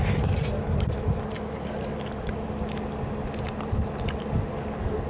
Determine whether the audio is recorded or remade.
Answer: recorded